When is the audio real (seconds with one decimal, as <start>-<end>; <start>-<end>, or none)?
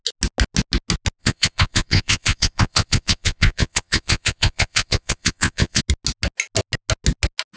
0.0-1.2; 5.8-7.6